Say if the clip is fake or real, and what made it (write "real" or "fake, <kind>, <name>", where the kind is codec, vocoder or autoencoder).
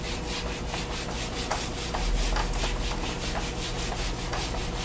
real